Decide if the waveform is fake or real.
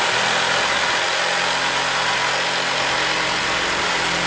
real